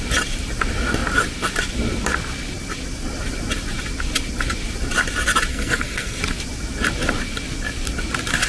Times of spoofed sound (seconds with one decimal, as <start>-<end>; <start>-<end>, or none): 5.5-6.2